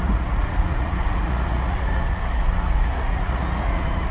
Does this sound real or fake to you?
fake